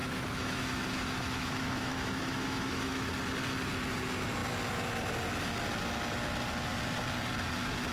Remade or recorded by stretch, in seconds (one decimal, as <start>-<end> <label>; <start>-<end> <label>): 0.0-3.1 remade; 3.1-7.9 recorded